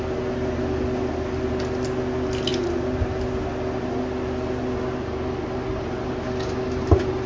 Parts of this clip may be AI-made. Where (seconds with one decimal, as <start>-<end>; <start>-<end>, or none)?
none